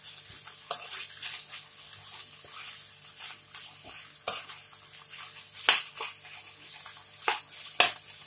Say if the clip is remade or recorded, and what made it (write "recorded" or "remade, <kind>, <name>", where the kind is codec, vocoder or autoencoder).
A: recorded